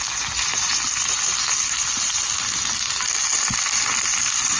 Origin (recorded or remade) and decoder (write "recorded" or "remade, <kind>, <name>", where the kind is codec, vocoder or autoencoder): recorded